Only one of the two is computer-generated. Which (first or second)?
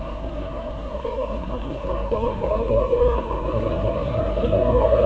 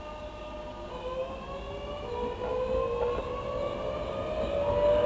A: first